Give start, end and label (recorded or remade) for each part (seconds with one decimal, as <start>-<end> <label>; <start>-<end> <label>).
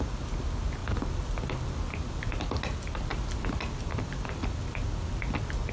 0.0-5.7 recorded